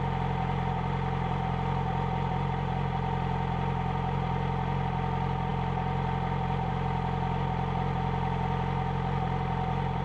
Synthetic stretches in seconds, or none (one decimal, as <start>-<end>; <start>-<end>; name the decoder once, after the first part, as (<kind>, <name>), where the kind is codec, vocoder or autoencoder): none